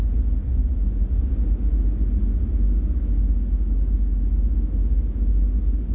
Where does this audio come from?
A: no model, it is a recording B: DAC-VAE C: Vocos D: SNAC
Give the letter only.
A